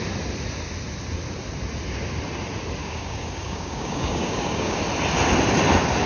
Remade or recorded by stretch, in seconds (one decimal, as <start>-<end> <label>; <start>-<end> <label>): 0.0-2.8 recorded; 2.8-4.8 remade; 4.8-6.1 recorded